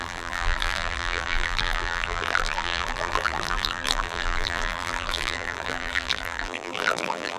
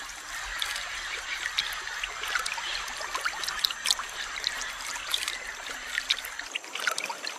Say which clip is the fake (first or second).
first